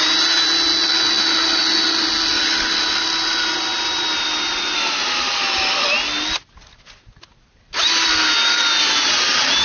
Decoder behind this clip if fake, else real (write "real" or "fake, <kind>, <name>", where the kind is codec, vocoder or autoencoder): real